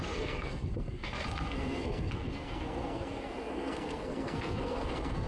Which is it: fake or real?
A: fake